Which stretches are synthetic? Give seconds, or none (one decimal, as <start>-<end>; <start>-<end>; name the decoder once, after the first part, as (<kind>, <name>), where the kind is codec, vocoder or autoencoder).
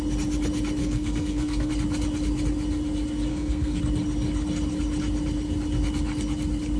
0.8-1.7 (codec, SNAC); 3.3-3.8